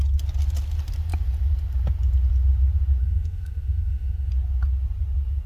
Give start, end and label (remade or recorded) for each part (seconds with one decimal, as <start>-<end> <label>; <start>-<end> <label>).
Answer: 0.0-3.0 recorded; 3.0-4.3 remade; 4.3-5.5 recorded

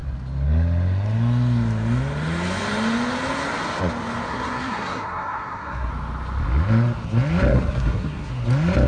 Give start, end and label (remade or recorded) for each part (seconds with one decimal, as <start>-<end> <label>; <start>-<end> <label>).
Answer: 0.0-4.3 recorded; 4.3-5.9 remade; 5.9-7.5 recorded; 7.5-8.3 remade; 8.3-8.9 recorded

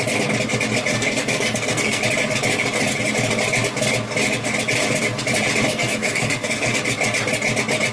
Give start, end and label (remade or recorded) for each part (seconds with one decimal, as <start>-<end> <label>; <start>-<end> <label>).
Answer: 0.0-0.9 recorded; 0.9-2.0 remade; 2.0-5.7 recorded; 5.7-6.8 remade; 6.8-7.9 recorded

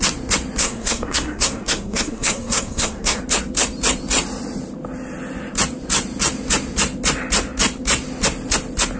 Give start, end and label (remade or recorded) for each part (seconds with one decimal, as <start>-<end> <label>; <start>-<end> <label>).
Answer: 0.0-0.6 recorded; 0.6-3.2 remade; 3.2-9.0 recorded

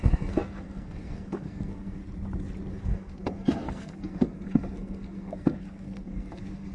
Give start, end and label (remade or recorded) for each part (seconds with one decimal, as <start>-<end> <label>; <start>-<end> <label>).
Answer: 0.0-2.0 remade; 2.0-2.7 recorded; 2.7-6.7 remade

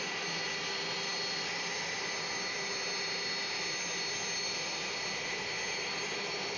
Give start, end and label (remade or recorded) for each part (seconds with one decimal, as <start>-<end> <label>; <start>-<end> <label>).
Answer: 0.0-6.6 recorded